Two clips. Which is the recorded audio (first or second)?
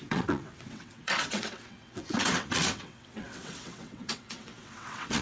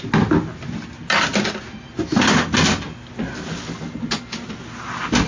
second